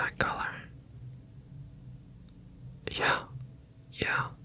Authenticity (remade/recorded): recorded